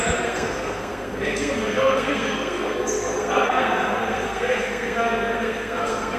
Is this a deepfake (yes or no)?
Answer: yes